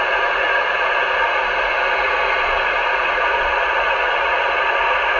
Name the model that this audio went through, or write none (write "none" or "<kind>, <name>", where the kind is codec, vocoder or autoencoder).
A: vocoder, Vocos